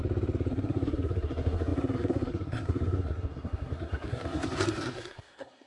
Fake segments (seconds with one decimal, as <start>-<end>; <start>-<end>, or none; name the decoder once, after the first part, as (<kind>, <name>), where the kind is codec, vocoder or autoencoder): 0.5-5.7 (codec, SNAC)